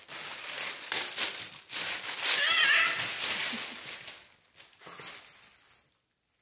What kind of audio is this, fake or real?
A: real